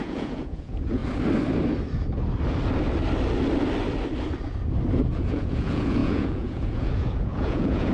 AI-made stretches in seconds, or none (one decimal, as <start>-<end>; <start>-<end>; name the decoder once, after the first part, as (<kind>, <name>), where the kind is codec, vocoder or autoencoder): 0.0-1.0 (vocoder, Vocos); 5.0-7.9